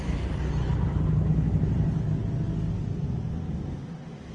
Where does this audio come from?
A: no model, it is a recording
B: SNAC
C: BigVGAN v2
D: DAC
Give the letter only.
A